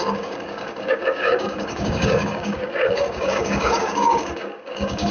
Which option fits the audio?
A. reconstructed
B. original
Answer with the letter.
A